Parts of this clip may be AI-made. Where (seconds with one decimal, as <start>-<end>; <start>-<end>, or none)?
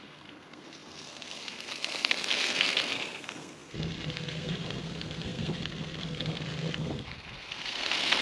0.0-8.2